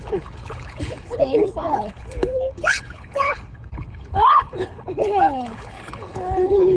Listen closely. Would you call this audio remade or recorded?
remade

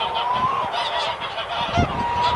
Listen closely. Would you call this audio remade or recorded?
recorded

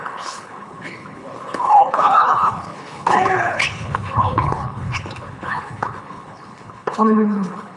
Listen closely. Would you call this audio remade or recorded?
remade